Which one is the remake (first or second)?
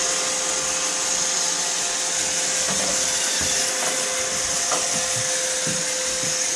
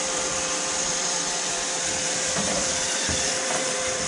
second